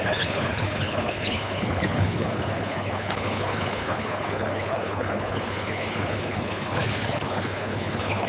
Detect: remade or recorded remade